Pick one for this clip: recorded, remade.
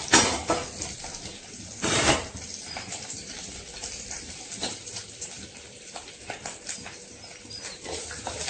remade